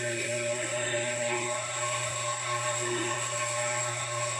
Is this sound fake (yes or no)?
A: yes